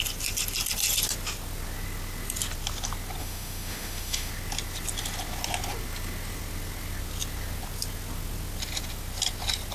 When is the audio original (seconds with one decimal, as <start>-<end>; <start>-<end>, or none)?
0.0-3.2; 4.3-9.7